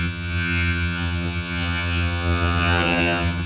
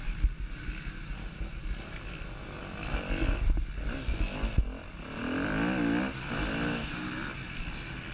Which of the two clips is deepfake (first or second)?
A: first